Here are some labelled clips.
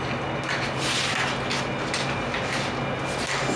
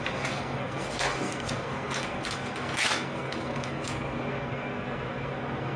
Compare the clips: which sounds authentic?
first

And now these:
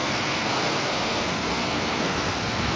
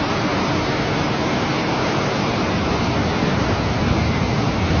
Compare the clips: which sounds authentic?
second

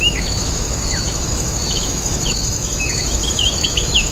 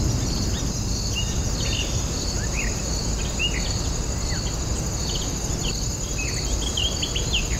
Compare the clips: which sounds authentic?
second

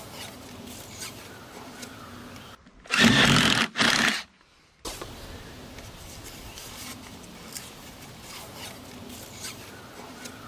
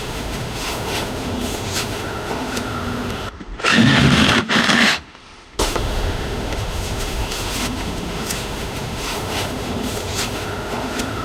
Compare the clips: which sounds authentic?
first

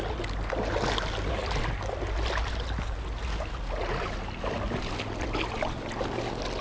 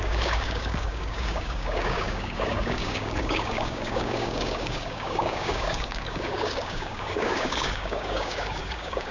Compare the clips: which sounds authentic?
first